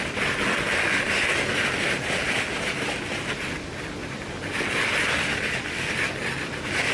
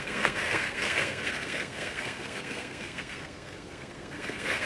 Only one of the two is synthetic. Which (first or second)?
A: second